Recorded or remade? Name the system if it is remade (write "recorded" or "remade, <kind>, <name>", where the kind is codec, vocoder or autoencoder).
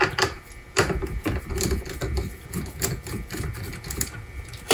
remade, vocoder, BigVGAN v2